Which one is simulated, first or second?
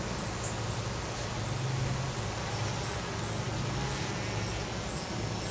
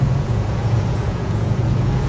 second